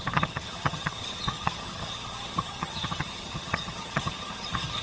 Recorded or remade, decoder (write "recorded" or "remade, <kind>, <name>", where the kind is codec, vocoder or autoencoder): remade, vocoder, HiFi-GAN